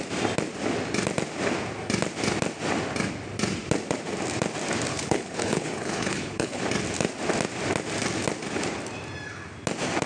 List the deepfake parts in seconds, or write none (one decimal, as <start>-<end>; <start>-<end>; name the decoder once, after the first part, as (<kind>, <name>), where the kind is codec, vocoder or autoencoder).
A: 4.9-6.6 (codec, HILCodec)